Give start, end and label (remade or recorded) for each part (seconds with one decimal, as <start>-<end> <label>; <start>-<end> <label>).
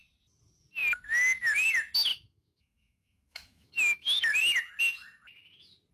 0.0-2.1 recorded; 2.1-4.2 remade; 4.2-5.9 recorded